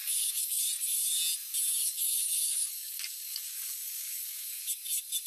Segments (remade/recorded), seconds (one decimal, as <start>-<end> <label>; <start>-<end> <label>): 0.0-0.6 remade; 0.6-1.8 recorded; 1.8-4.7 remade; 4.7-5.3 recorded